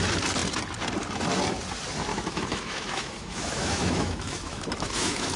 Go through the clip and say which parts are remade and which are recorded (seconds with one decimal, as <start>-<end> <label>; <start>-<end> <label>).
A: 0.0-2.1 recorded; 2.1-5.4 remade